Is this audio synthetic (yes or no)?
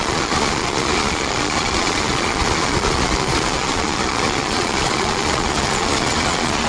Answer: yes